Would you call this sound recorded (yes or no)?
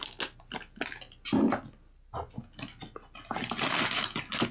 yes